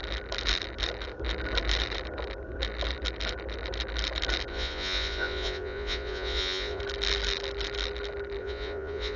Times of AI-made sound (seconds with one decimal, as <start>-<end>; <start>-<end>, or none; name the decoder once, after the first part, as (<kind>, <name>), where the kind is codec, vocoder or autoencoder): 4.5-6.8 (vocoder, Vocos); 8.4-9.2